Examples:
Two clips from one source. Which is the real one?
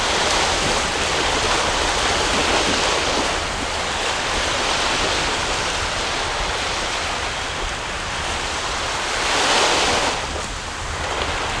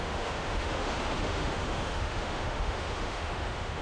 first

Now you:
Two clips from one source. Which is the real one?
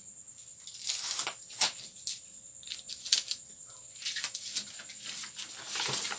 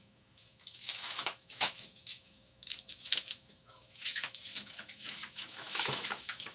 first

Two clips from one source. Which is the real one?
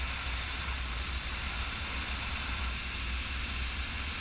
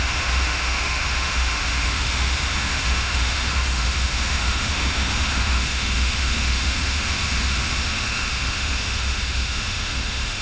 first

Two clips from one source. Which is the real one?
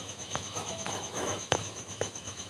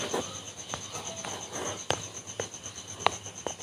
second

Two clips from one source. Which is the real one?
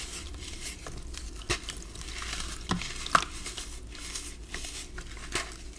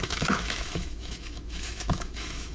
first